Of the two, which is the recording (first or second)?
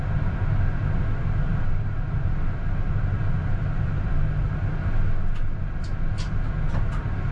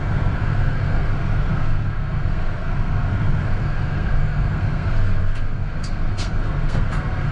first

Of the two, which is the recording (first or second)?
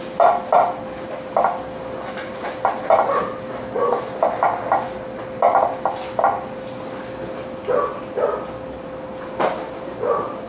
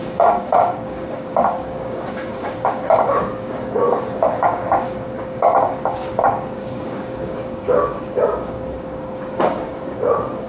first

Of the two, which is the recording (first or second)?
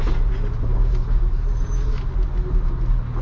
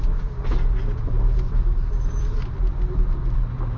first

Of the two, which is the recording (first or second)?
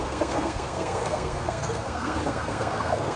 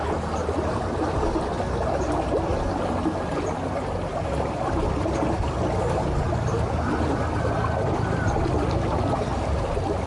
second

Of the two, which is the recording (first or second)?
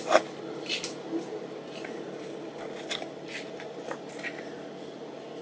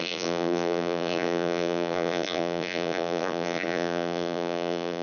first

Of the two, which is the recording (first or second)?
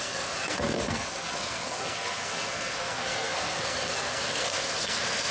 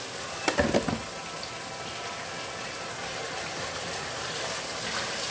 second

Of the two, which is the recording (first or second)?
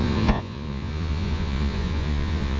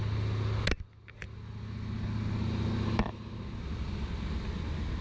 second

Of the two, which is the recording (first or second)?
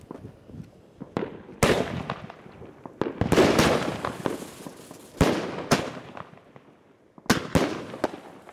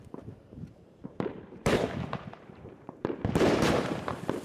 first